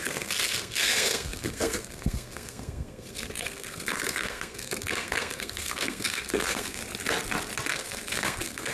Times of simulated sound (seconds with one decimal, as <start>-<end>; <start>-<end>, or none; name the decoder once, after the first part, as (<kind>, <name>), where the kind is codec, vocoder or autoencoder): 0.0-6.8 (codec, SNAC); 7.7-8.7